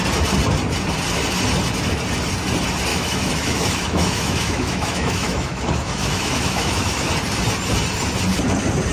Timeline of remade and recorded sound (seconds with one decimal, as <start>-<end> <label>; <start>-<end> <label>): 0.0-2.9 recorded; 2.9-7.1 remade; 7.1-8.9 recorded